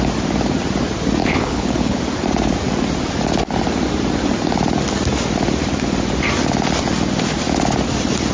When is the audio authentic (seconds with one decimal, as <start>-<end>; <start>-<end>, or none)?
0.0-1.2; 2.0-8.3